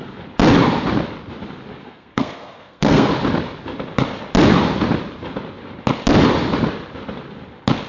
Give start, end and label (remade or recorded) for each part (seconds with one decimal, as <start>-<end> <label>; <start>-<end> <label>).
0.0-1.8 recorded; 1.8-3.1 remade; 3.1-7.9 recorded